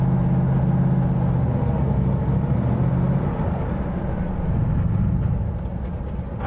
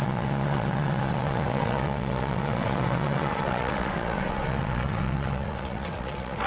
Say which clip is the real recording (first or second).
first